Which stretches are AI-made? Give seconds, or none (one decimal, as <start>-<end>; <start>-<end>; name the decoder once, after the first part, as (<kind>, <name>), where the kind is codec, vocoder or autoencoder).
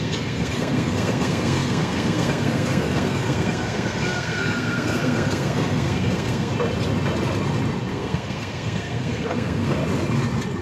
0.0-6.5 (codec, SNAC); 7.9-9.8